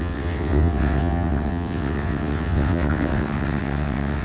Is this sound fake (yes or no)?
yes